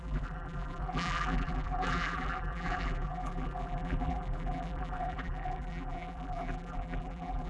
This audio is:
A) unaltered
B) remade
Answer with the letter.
B